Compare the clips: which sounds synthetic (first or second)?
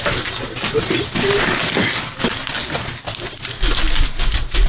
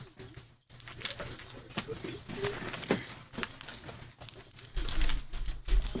first